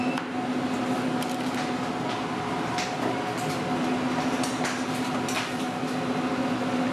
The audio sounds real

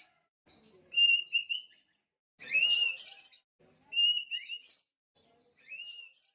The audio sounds real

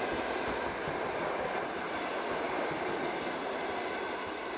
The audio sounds real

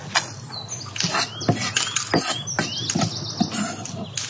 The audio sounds real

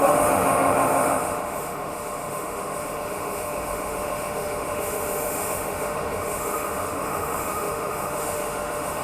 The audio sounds fake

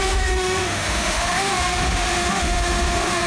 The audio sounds fake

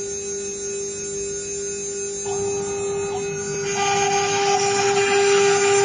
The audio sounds real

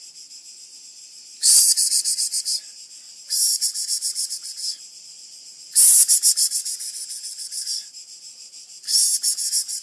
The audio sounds real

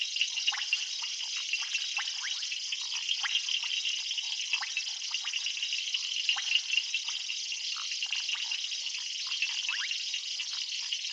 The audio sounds real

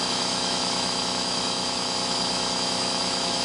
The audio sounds fake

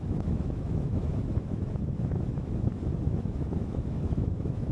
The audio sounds fake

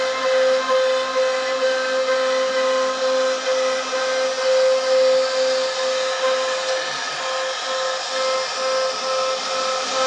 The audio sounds real